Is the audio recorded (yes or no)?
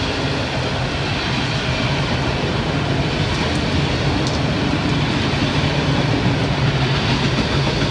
yes